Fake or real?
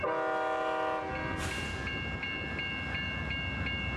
real